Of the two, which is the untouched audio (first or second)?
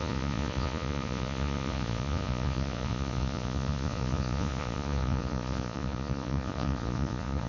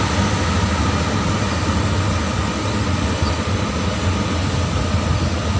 second